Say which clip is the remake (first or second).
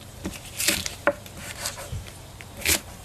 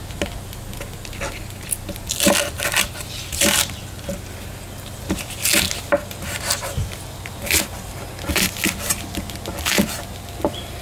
first